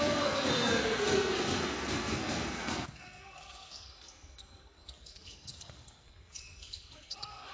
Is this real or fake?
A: fake